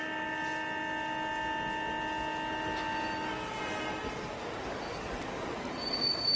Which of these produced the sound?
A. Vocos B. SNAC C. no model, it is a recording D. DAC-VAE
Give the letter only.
C